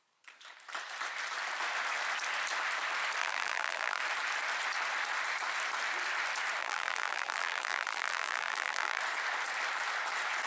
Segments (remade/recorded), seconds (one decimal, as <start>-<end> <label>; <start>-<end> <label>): 0.0-3.2 recorded; 3.2-4.0 remade; 4.0-6.6 recorded; 6.6-9.0 remade; 9.0-10.5 recorded